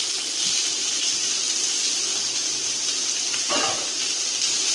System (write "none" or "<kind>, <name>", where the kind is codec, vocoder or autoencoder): none